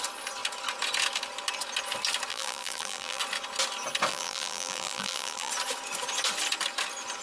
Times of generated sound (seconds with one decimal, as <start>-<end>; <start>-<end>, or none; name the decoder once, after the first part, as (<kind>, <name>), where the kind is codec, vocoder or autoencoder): 2.3-3.2 (vocoder, BigVGAN v2); 4.1-5.5